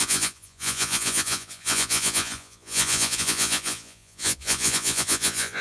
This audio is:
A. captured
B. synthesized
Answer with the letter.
B